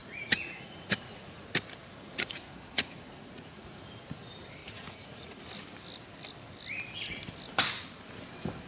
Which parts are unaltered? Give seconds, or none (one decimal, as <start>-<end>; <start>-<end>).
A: 1.4-1.8; 3.9-4.6; 5.4-8.7